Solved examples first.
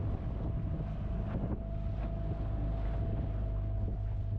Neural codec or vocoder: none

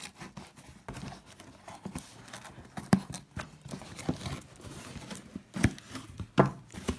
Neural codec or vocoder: none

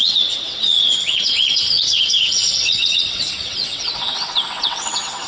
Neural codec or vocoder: vocoder, WaveNeXt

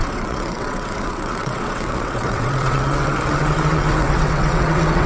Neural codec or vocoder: vocoder, WaveNeXt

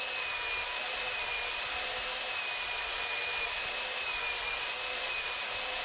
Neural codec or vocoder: none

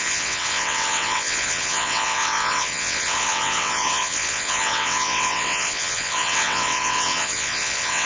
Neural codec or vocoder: vocoder, WaveNeXt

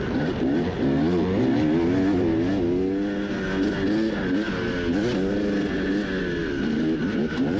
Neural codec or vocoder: none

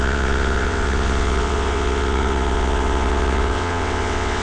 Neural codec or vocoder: vocoder, WaveNeXt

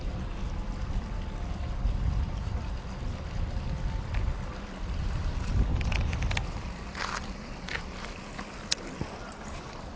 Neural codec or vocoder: none